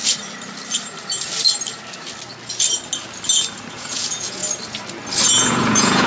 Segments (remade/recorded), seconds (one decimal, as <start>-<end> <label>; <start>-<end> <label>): 0.0-3.7 recorded; 3.7-4.4 remade; 4.4-5.3 recorded; 5.3-6.1 remade